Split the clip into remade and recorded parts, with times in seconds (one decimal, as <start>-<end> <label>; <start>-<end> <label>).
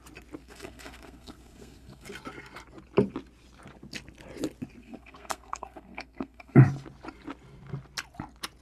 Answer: 0.0-0.4 recorded; 0.4-2.1 remade; 2.1-4.8 recorded; 4.8-6.6 remade; 6.6-8.6 recorded